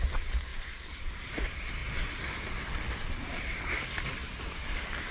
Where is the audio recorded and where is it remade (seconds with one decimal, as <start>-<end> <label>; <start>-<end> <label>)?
0.0-0.5 remade; 0.5-1.0 recorded; 1.0-1.8 remade; 1.8-3.3 recorded; 3.3-4.2 remade; 4.2-5.1 recorded